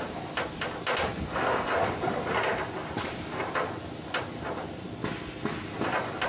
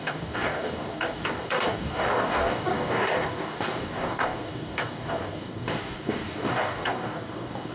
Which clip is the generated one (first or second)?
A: second